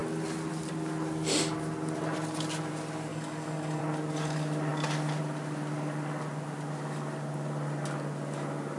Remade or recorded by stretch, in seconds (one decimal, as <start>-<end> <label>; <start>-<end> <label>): 0.0-3.1 recorded; 3.1-3.8 remade; 3.8-8.8 recorded